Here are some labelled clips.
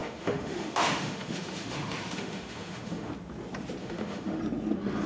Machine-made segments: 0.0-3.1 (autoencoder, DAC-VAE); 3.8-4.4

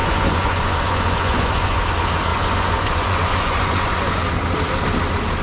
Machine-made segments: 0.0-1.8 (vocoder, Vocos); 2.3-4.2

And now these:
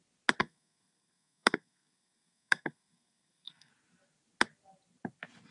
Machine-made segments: 0.4-3.7 (codec, SNAC)